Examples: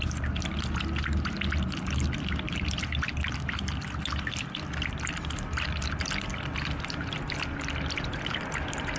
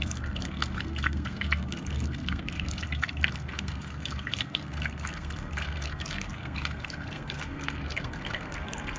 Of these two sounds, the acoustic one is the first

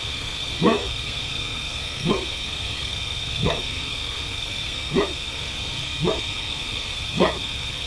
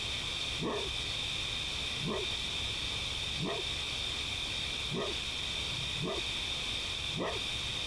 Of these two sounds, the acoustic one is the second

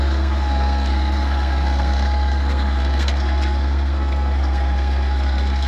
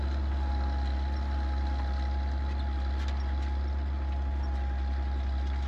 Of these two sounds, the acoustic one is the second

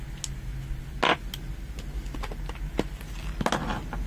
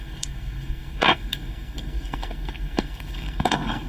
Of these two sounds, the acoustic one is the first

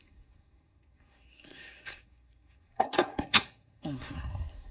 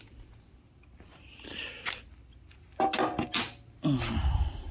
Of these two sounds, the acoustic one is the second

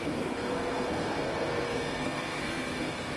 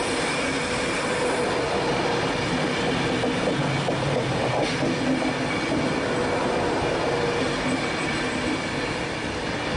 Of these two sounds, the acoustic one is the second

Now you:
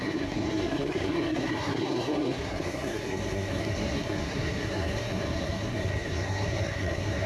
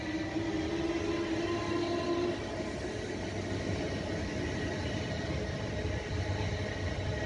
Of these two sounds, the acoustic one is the second